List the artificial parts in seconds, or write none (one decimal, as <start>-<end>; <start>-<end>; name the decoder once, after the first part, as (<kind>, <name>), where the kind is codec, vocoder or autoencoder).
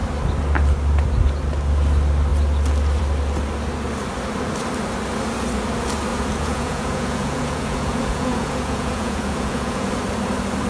6.1-9.9 (vocoder, Vocos)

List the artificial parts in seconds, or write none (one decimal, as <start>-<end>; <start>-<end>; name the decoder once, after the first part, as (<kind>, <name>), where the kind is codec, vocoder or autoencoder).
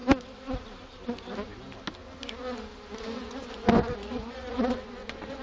3.0-5.4 (vocoder, Vocos)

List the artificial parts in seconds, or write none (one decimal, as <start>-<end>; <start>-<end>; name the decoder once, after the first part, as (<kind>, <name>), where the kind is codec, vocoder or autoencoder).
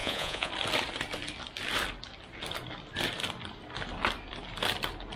0.0-0.5 (vocoder, Vocos)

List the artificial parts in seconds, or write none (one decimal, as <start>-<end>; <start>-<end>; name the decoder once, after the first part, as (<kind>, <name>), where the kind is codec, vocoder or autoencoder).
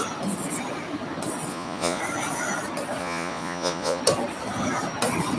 1.5-2.0 (vocoder, Vocos); 3.0-4.0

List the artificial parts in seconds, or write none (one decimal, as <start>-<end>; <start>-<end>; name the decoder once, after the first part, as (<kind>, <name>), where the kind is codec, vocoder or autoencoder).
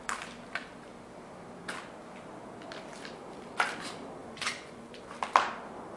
4.2-5.0 (vocoder, Vocos)